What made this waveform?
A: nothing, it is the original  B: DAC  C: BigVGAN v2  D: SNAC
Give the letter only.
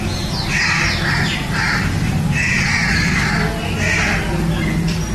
A